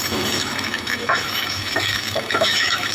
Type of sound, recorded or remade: remade